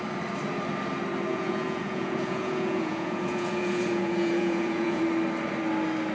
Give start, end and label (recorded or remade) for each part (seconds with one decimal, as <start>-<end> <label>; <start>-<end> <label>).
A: 0.0-1.3 recorded; 1.3-5.0 remade; 5.0-6.1 recorded